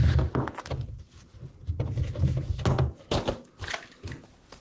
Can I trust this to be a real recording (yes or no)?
yes